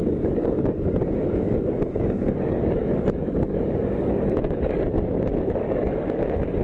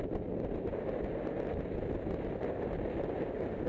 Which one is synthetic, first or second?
first